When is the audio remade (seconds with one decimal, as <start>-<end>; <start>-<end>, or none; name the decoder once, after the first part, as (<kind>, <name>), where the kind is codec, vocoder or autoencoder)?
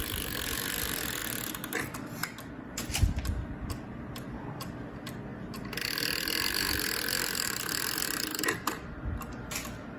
none